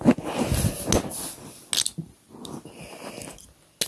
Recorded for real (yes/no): yes